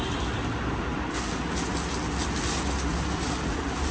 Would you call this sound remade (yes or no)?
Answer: no